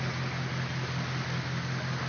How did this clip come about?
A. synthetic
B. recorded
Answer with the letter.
B